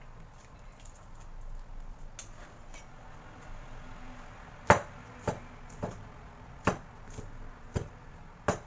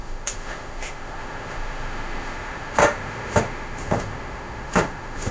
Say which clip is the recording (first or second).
first